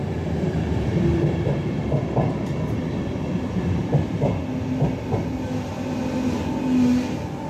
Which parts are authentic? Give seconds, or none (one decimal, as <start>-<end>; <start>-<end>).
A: 4.4-7.5